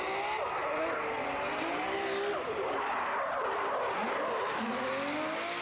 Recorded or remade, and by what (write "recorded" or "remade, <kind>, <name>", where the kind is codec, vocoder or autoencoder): recorded